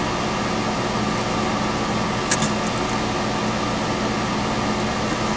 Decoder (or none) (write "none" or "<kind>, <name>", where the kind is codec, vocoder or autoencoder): none